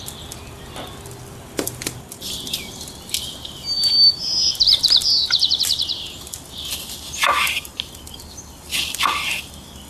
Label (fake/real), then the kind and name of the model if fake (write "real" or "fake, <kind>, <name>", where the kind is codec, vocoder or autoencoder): real